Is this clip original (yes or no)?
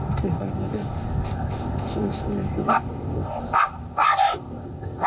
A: no